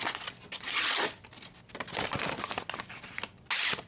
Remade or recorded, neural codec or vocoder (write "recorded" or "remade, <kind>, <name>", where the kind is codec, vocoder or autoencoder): recorded